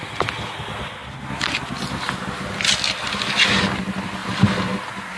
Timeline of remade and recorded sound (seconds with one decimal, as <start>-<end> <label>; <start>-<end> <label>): 0.0-4.2 recorded; 4.2-4.8 remade; 4.8-5.2 recorded